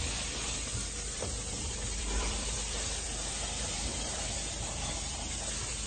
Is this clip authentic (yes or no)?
no